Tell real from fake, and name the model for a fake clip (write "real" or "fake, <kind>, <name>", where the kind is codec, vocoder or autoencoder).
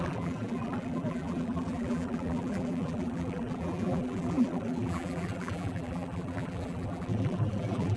fake, vocoder, BigVGAN v2